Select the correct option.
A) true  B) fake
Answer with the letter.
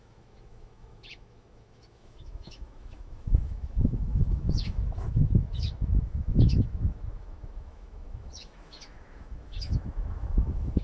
B